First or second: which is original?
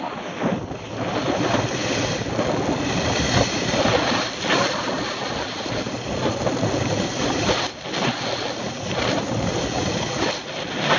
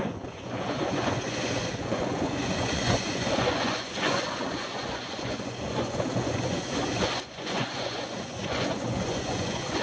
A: first